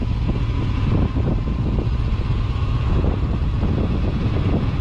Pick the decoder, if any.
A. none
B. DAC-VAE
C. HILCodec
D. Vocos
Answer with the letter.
D